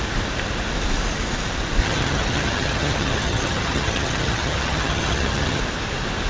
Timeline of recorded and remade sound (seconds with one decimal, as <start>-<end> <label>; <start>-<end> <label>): 0.0-1.8 recorded; 1.8-5.6 remade; 5.6-6.3 recorded